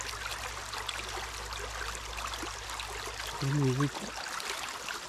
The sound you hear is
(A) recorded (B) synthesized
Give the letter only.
A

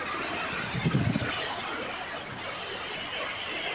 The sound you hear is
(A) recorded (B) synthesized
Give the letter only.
A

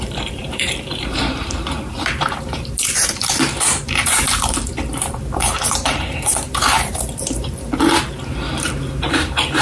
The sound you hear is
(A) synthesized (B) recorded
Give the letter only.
A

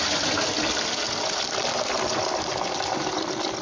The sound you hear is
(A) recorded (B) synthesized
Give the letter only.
A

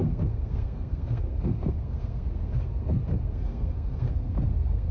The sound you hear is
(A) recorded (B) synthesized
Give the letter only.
B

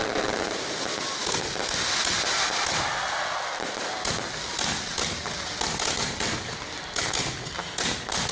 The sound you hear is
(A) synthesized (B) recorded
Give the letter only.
B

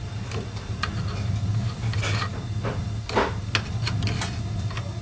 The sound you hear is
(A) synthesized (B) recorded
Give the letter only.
B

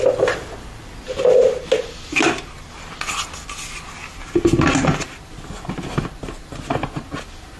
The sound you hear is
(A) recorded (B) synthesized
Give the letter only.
A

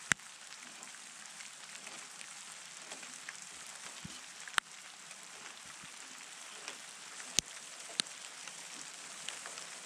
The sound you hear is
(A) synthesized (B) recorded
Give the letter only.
A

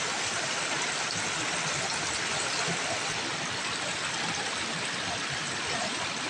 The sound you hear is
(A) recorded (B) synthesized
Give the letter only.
A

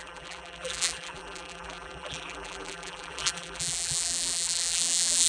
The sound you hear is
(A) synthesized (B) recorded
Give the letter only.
A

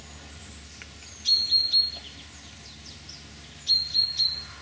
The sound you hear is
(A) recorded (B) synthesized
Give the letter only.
A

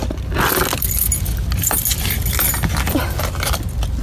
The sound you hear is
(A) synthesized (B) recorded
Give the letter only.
B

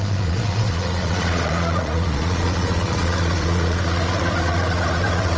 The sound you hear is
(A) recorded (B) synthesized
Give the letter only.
B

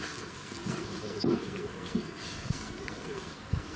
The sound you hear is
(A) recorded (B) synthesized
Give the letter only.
B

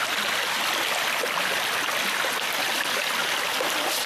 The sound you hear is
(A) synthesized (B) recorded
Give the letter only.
B